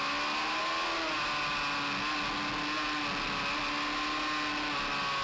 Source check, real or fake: real